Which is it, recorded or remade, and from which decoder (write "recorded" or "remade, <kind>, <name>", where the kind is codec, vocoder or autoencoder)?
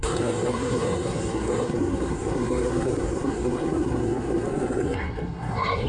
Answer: remade, codec, SNAC